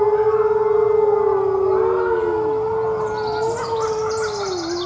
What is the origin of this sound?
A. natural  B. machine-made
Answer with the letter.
A